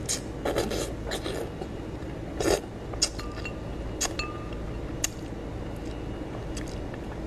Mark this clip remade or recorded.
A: recorded